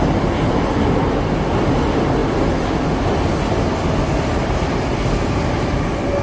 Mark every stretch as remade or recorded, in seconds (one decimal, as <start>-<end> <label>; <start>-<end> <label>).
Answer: 0.0-6.2 recorded